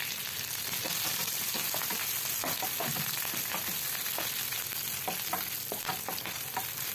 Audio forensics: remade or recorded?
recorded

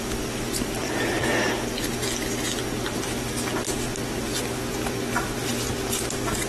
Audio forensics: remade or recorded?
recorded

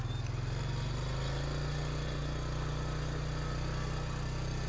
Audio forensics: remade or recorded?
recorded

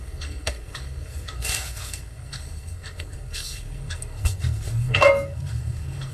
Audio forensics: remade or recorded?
remade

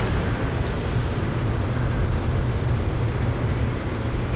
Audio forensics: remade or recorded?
recorded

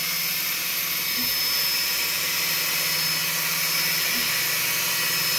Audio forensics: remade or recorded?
recorded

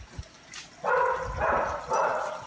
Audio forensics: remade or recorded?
recorded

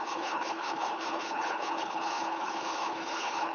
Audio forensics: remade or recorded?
remade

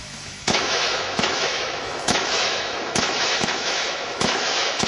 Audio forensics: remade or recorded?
remade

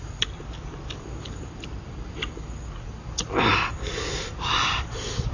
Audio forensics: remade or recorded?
remade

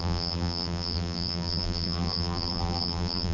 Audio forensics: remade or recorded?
remade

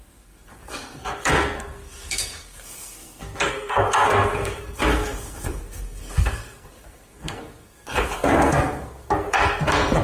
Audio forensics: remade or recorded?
remade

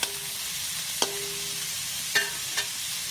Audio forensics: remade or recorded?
recorded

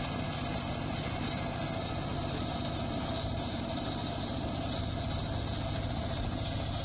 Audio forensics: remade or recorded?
recorded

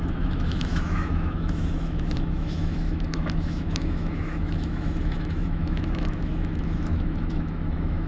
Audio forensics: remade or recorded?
remade